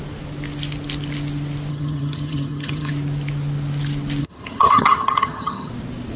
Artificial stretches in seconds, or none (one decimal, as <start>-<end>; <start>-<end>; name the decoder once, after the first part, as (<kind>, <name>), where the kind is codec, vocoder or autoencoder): 1.7-2.9 (vocoder, HiFi-GAN); 4.2-5.7